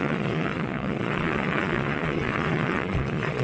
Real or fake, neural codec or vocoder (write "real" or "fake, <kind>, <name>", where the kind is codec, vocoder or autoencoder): fake, vocoder, Vocos